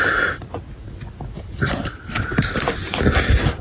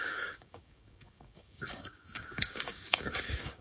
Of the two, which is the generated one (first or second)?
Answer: second